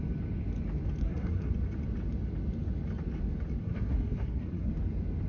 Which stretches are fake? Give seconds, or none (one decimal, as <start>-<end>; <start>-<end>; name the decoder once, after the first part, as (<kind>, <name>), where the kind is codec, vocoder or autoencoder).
1.0-1.5 (codec, SNAC); 3.6-4.7